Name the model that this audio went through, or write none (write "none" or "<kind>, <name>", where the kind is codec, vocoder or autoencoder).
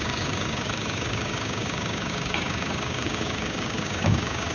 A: codec, DAC